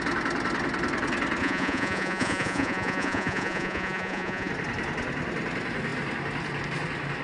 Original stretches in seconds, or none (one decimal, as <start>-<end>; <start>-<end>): 0.0-1.4; 4.5-7.2